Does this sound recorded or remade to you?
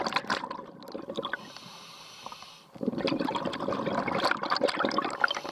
recorded